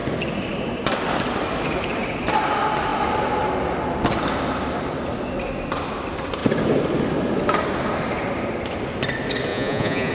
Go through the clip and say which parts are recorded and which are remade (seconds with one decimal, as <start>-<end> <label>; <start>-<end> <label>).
0.0-9.5 recorded; 9.5-10.1 remade